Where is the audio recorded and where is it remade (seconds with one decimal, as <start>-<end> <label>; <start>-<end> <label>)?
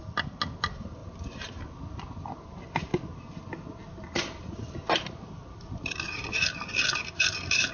0.0-7.7 recorded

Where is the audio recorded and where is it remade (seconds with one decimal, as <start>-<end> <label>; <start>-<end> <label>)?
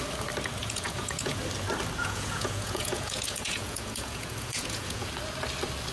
0.0-0.6 recorded; 0.6-1.4 remade; 1.4-2.0 recorded; 2.0-5.1 remade; 5.1-5.9 recorded